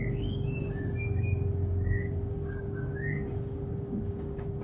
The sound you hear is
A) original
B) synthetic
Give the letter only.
B